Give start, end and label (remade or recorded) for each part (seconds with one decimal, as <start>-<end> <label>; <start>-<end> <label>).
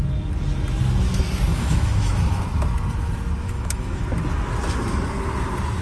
0.0-1.5 recorded; 1.5-2.4 remade; 2.4-3.4 recorded; 3.4-4.0 remade; 4.0-5.8 recorded